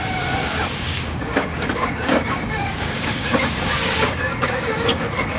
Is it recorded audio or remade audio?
remade